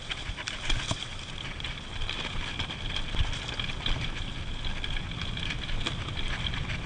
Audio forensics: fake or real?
real